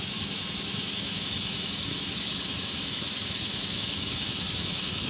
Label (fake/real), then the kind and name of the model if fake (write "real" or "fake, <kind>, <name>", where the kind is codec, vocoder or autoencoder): fake, autoencoder, DAC-VAE